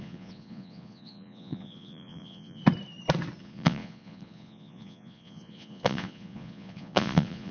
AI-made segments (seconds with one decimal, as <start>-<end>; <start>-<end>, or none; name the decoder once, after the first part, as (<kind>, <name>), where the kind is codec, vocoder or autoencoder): 0.0-2.6 (vocoder, Vocos); 3.4-7.5